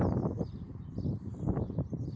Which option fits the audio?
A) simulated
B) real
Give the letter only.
A